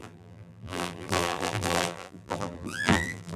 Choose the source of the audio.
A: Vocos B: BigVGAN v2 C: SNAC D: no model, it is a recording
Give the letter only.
B